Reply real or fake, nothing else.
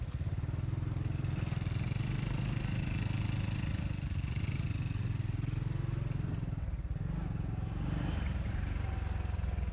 real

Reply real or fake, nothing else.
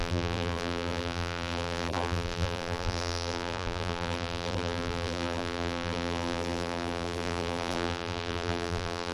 fake